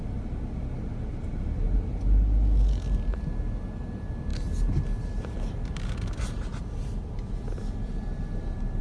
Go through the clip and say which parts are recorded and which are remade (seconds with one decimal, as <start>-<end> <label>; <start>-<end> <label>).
0.0-8.8 recorded